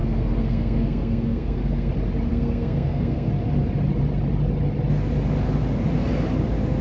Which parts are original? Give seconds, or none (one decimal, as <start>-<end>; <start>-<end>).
1.9-2.3; 3.3-6.8